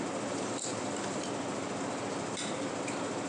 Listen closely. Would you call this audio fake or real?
fake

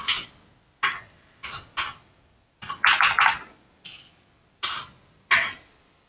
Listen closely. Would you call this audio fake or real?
real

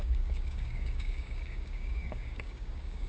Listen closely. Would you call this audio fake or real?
fake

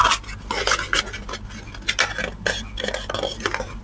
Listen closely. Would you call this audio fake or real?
real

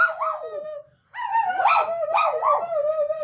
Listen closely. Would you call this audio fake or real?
real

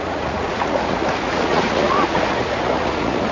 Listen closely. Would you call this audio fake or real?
fake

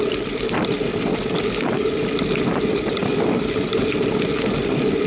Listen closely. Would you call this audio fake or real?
real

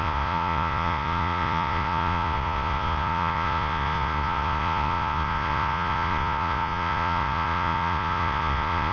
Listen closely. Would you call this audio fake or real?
fake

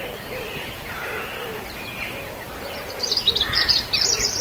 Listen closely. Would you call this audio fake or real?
fake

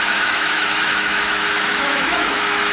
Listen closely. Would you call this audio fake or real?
fake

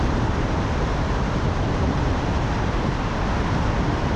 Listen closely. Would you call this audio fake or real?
fake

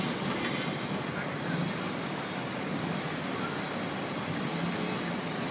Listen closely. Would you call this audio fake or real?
real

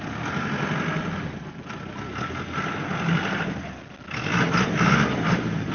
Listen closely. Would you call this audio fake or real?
real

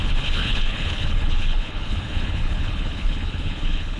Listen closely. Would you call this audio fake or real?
fake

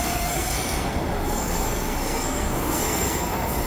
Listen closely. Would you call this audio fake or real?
fake